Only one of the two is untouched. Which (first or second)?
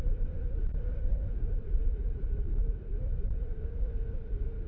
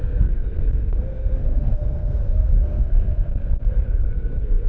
first